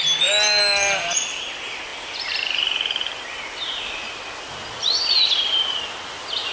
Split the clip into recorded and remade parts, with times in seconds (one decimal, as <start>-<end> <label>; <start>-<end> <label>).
0.0-6.5 recorded